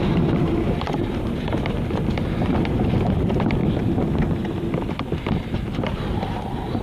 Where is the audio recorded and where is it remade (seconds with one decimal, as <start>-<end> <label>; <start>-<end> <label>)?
0.0-3.6 remade; 3.6-5.8 recorded; 5.8-6.8 remade

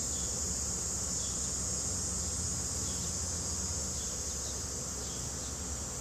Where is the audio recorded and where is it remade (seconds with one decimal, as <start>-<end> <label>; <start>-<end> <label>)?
0.0-1.1 remade; 1.1-2.5 recorded; 2.5-3.1 remade; 3.1-3.8 recorded; 3.8-5.3 remade; 5.3-6.0 recorded

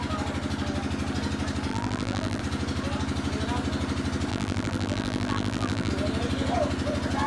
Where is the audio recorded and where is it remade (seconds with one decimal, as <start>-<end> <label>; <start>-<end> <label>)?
0.0-1.7 recorded; 1.7-2.4 remade; 2.4-4.3 recorded; 4.3-5.9 remade; 5.9-7.3 recorded

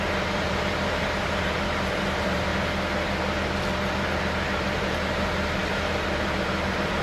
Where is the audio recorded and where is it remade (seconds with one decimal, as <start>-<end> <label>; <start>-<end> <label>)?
0.0-2.5 remade; 2.5-4.5 recorded; 4.5-7.0 remade

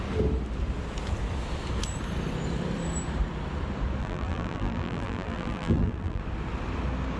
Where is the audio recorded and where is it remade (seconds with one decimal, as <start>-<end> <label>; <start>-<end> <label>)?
0.0-4.0 recorded; 4.0-6.2 remade; 6.2-7.2 recorded

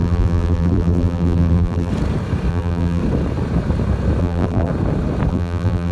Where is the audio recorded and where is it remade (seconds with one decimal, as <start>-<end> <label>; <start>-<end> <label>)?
0.0-1.9 remade; 1.9-2.5 recorded; 2.5-3.0 remade; 3.0-4.2 recorded; 4.2-4.7 remade; 4.7-5.3 recorded; 5.3-5.9 remade